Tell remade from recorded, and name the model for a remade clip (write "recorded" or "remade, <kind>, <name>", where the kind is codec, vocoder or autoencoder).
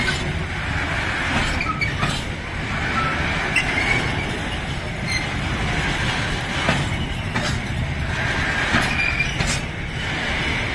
recorded